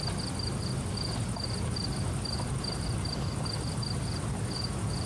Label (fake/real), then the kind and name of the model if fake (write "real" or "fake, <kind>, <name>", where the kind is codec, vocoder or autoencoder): real